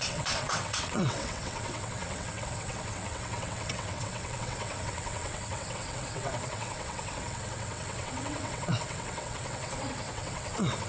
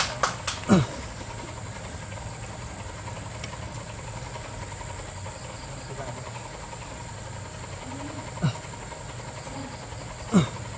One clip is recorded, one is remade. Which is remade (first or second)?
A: first